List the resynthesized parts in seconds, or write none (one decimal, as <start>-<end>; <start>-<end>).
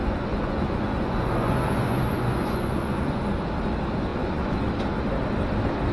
0.0-3.2; 4.1-4.7